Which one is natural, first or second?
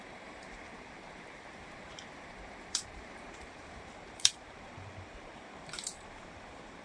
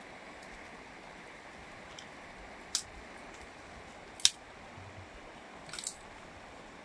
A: second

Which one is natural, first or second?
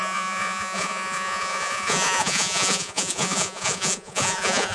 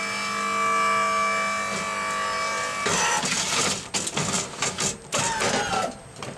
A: second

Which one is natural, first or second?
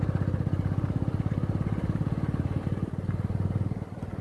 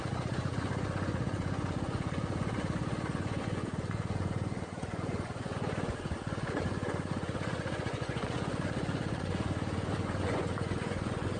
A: first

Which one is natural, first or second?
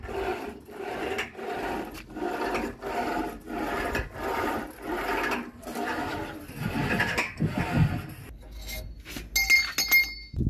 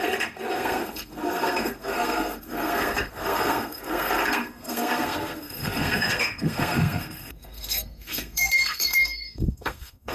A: first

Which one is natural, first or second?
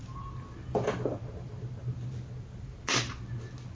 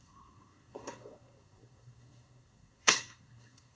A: first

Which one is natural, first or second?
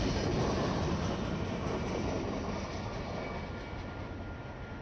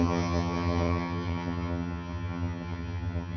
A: first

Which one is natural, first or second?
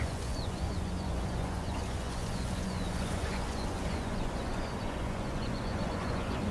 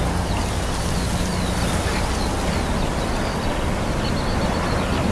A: second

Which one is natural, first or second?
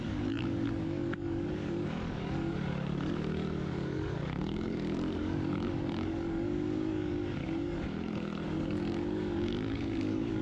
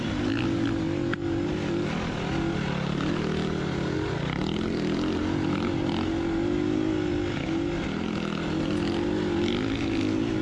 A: second